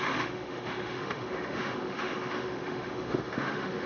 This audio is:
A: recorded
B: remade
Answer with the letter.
B